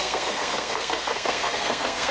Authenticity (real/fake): fake